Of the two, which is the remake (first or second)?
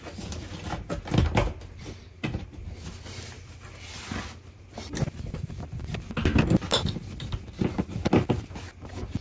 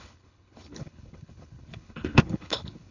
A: second